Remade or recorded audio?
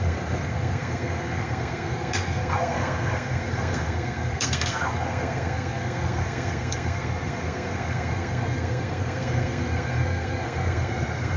remade